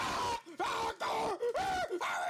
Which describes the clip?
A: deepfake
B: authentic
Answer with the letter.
B